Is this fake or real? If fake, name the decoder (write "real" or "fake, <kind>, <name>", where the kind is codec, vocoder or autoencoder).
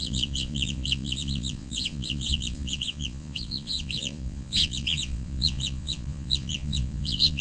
fake, vocoder, Vocos